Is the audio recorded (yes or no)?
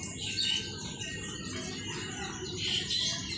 yes